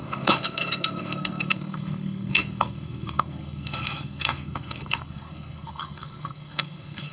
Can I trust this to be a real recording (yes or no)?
no